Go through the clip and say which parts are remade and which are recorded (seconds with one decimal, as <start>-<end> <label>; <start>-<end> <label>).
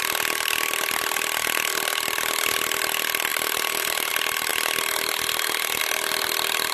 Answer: 0.0-3.3 recorded; 3.3-4.1 remade; 4.1-6.7 recorded